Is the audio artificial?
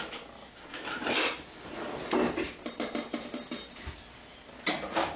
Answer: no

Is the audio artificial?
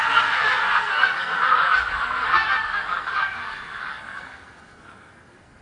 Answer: yes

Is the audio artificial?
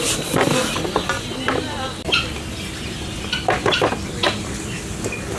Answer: no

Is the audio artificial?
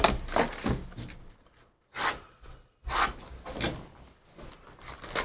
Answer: no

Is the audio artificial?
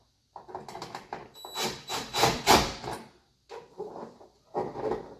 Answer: no